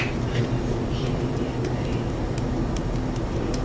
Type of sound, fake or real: real